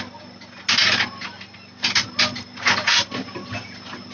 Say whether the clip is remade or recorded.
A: recorded